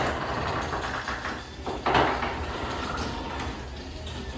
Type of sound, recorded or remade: recorded